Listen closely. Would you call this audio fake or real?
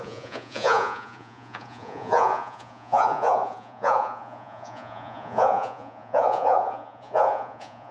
fake